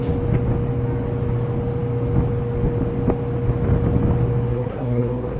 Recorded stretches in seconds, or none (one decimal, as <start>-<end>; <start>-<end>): 0.0-4.5

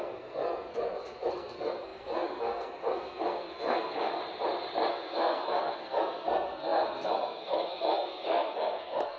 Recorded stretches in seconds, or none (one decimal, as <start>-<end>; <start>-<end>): 4.2-4.9